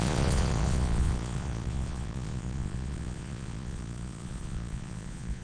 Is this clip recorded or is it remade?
remade